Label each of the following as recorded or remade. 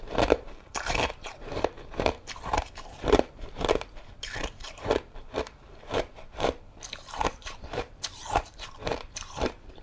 remade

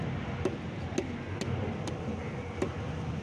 recorded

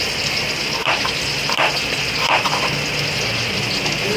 recorded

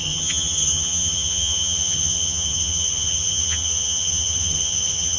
remade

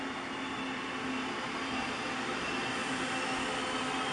recorded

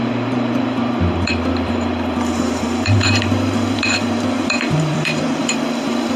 remade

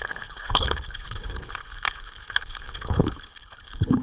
remade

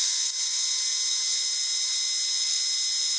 recorded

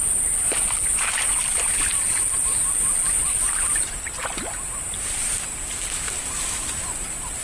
remade